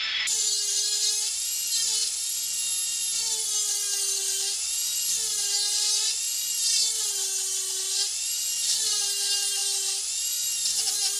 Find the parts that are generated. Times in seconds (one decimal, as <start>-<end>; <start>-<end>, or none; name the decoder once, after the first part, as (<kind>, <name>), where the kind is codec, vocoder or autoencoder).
none